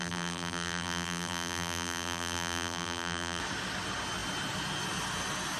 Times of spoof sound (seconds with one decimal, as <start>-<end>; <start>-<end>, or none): 0.0-3.4